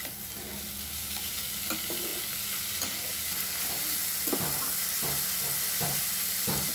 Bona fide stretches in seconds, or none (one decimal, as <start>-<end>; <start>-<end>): 0.0-1.0; 1.5-6.7